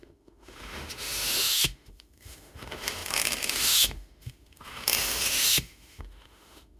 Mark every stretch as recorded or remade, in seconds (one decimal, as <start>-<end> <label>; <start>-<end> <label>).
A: 0.0-6.8 remade